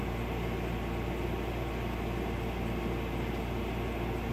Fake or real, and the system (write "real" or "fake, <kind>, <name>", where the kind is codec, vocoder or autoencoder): real